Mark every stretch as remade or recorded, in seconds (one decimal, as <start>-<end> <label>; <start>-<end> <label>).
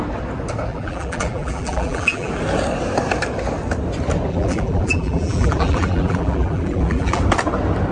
0.0-0.7 recorded; 0.7-2.3 remade; 2.3-4.3 recorded; 4.3-7.2 remade; 7.2-7.9 recorded